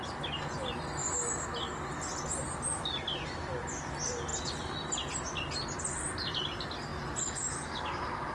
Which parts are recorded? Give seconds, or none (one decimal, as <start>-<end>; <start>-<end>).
0.0-8.3